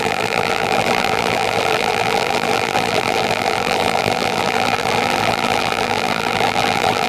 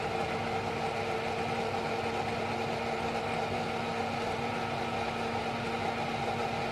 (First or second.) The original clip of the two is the second